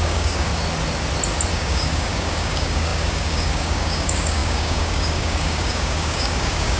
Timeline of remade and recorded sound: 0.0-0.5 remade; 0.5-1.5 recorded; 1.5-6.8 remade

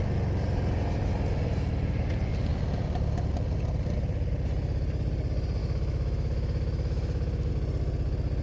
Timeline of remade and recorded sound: 0.0-5.6 recorded; 5.6-7.5 remade; 7.5-8.4 recorded

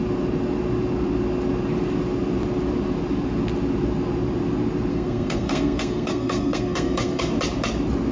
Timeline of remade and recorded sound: 0.0-4.9 recorded; 4.9-7.2 remade; 7.2-8.1 recorded

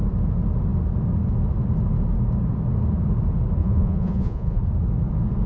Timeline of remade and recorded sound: 0.0-3.6 recorded; 3.6-4.6 remade; 4.6-5.5 recorded